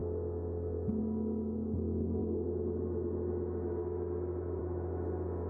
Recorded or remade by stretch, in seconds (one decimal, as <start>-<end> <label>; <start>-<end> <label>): 0.0-5.5 recorded